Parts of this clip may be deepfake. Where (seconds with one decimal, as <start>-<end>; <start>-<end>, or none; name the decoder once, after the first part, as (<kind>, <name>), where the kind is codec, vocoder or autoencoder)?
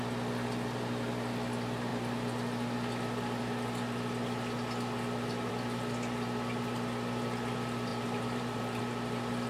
7.9-8.8 (vocoder, BigVGAN v2)